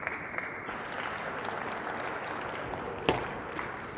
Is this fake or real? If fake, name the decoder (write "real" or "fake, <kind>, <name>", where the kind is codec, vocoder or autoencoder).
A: real